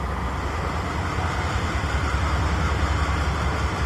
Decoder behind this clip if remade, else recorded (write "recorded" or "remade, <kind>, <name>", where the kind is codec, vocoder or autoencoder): recorded